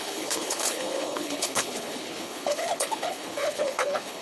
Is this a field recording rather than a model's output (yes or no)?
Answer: no